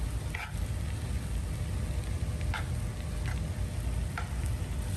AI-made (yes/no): no